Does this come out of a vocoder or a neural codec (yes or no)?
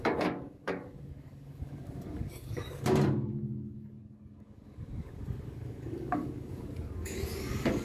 yes